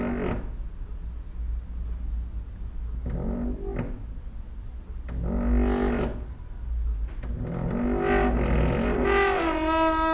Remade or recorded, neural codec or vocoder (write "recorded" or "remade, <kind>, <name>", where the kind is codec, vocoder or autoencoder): recorded